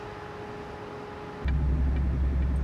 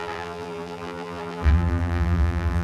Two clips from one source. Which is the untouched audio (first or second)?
first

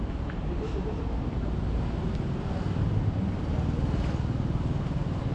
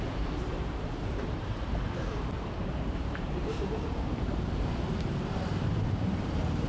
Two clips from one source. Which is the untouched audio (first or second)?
first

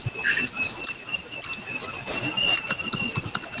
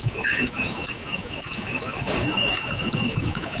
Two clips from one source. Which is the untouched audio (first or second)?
first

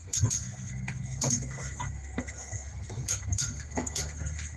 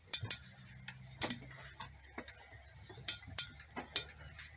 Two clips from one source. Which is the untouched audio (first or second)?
second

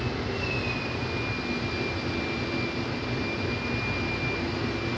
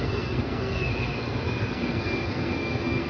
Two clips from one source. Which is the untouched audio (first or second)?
first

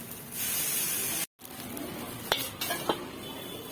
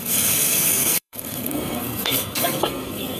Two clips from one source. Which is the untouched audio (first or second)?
first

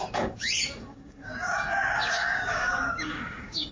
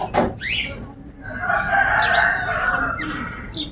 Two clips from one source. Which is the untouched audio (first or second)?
second